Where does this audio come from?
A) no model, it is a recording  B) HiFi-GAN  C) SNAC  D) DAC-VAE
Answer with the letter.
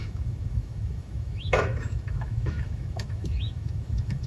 D